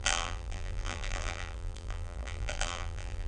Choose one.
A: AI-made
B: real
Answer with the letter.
A